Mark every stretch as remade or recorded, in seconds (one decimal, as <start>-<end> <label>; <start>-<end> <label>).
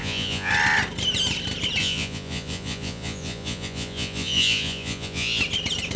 0.0-0.5 remade; 0.5-1.8 recorded; 1.8-5.4 remade; 5.4-6.0 recorded